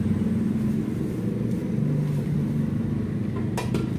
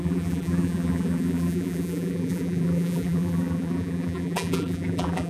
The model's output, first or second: second